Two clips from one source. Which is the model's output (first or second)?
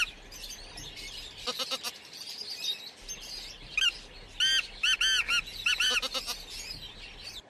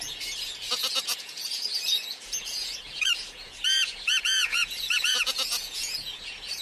second